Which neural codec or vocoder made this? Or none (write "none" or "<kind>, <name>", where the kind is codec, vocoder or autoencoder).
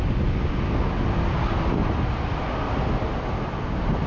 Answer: none